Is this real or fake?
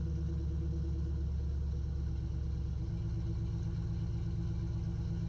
real